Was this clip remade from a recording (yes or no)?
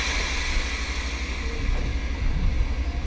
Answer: no